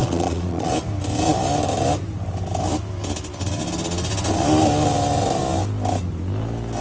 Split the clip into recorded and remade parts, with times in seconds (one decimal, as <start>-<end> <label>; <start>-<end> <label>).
0.0-0.7 remade; 0.7-6.8 recorded